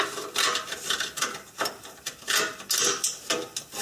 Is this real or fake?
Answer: real